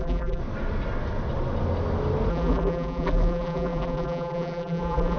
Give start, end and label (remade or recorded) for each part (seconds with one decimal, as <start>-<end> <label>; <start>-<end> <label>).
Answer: 0.0-0.4 remade; 0.4-2.3 recorded; 2.3-5.2 remade